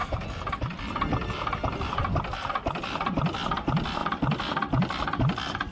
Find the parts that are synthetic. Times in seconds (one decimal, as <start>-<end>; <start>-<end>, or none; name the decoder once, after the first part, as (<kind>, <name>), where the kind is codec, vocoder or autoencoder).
0.0-0.6 (vocoder, BigVGAN v2); 4.0-5.2